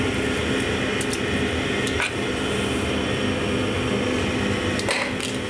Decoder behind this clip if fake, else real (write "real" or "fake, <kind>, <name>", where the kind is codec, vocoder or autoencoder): real